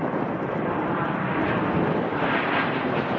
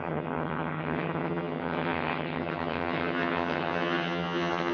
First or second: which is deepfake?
second